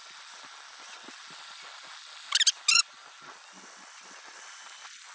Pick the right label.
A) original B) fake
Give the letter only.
A